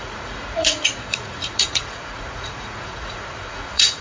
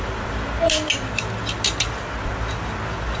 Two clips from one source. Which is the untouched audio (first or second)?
second